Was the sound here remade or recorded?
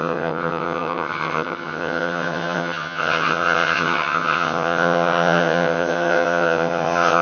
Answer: remade